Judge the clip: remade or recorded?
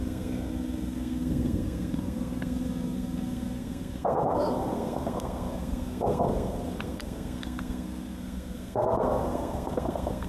remade